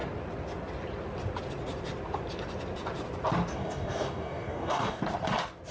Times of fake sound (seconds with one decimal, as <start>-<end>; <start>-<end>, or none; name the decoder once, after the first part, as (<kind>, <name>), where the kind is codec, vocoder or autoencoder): 3.5-5.0 (codec, DAC)